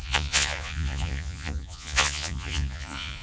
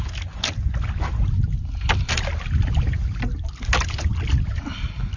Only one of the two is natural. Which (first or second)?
second